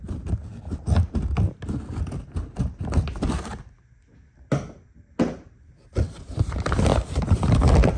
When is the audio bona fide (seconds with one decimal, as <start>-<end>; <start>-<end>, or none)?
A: 0.0-8.0